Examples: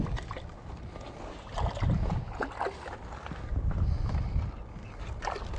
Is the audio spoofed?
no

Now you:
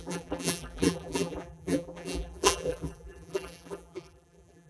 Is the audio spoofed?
yes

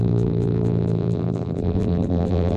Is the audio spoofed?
yes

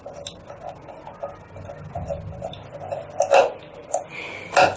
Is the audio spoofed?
no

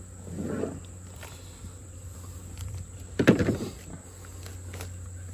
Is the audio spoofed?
no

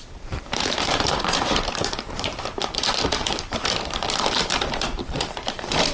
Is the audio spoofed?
yes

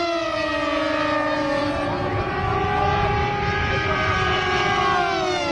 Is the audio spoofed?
no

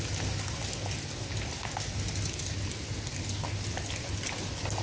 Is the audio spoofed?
no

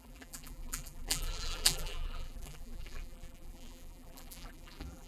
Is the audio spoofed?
yes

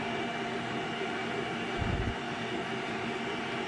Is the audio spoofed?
yes